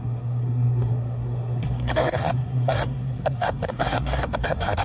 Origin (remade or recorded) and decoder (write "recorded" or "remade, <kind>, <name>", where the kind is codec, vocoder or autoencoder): remade, codec, SNAC